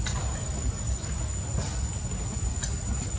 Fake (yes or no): no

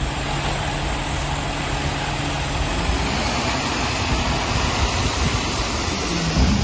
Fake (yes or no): no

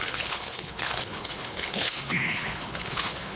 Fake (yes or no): yes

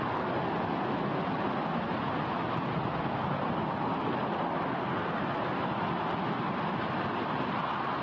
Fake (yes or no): no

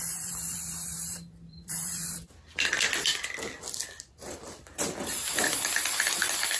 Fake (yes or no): yes